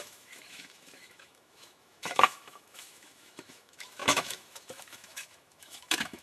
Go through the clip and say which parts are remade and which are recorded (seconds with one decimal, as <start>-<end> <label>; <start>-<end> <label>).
0.0-6.2 remade